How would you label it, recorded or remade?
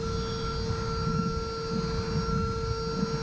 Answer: recorded